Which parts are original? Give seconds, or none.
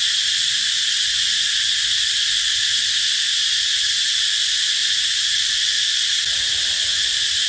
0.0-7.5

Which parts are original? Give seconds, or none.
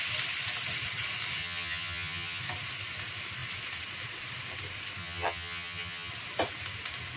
0.0-1.4; 2.4-5.0; 6.1-7.2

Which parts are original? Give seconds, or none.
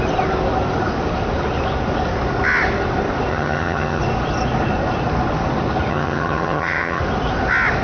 0.0-3.3; 4.0-5.9; 7.0-7.8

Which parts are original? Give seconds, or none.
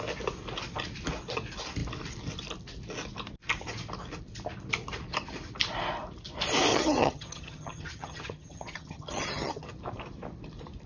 0.0-6.7; 9.7-10.9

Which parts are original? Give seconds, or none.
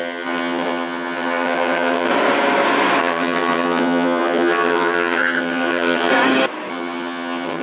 2.1-3.0; 6.1-6.7